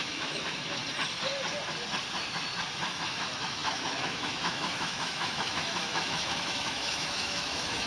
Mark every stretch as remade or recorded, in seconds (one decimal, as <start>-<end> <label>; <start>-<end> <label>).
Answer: 0.0-0.8 remade; 0.8-2.9 recorded; 2.9-7.9 remade